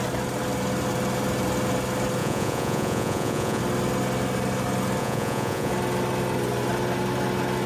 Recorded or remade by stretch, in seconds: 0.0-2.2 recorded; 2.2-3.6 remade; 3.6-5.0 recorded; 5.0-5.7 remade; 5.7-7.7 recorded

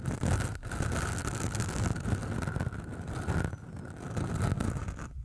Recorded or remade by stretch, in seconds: 0.0-5.2 recorded

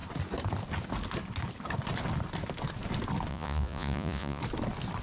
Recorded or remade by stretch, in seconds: 0.0-3.3 recorded; 3.3-4.4 remade; 4.4-5.0 recorded

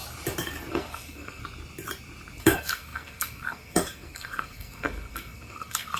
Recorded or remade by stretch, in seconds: 0.0-0.7 recorded; 0.7-1.4 remade; 1.4-2.4 recorded; 2.4-6.0 remade

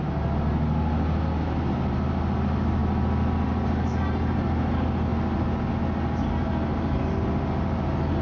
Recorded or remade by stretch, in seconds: 0.0-8.2 recorded

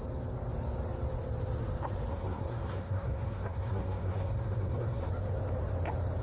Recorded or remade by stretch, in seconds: 0.0-2.1 recorded; 2.1-5.1 remade; 5.1-6.2 recorded

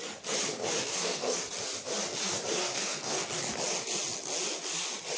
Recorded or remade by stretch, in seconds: 0.0-0.9 recorded; 0.9-1.4 remade; 1.4-2.6 recorded; 2.6-3.3 remade; 3.3-5.2 recorded

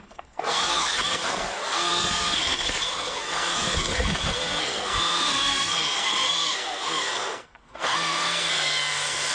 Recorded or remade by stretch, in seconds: 0.0-9.3 remade